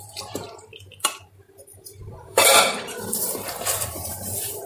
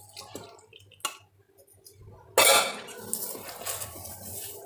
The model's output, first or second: first